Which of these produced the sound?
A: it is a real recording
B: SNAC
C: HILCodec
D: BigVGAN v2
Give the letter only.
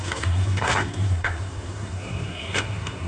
B